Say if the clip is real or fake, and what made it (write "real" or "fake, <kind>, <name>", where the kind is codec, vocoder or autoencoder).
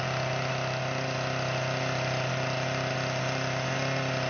real